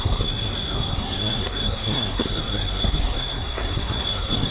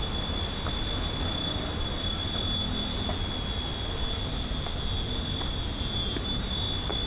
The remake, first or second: first